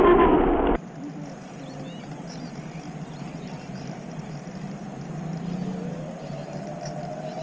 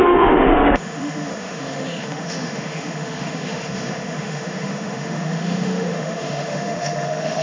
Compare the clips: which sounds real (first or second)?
first